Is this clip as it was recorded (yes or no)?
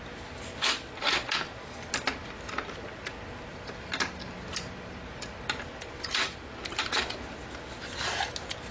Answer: yes